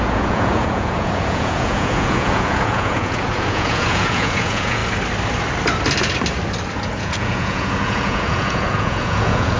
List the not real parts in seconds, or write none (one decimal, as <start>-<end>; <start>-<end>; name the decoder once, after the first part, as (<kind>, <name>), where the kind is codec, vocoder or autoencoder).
0.0-4.8 (vocoder, Vocos); 7.0-9.6